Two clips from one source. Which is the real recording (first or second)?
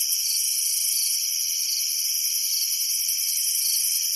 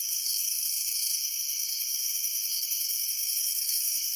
first